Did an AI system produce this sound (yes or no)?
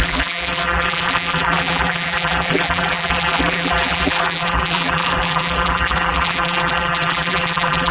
yes